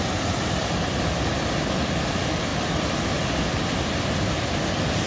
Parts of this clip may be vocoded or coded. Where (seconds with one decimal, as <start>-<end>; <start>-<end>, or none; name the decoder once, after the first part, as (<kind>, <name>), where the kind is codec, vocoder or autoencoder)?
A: none